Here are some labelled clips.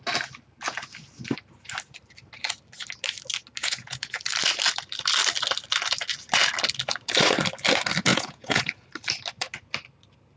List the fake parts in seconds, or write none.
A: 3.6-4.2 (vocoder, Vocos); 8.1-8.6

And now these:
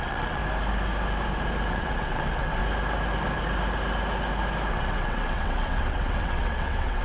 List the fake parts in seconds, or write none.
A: 0.0-0.4 (vocoder, WaveNeXt); 1.7-2.6; 4.7-7.0

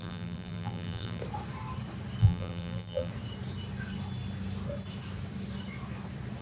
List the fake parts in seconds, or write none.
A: 0.0-1.2 (vocoder, BigVGAN v2); 2.2-3.1